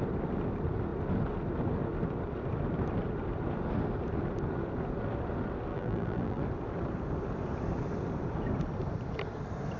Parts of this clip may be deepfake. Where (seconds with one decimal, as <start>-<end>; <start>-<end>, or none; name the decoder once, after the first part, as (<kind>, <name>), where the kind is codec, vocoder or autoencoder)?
5.7-6.4 (vocoder, BigVGAN v2)